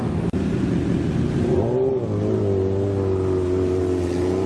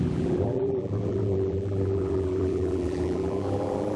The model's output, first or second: second